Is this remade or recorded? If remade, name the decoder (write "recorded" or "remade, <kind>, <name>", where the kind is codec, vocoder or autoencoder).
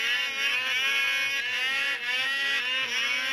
recorded